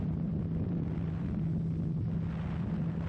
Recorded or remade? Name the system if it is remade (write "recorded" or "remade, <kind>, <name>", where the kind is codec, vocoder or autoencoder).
recorded